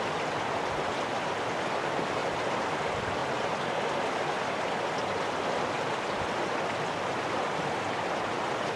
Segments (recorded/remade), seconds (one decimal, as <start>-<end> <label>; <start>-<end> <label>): 0.0-8.8 recorded